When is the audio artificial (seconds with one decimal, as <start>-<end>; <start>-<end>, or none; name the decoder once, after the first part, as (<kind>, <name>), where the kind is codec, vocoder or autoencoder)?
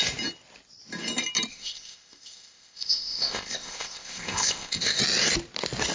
1.5-5.0 (codec, ZipCodec)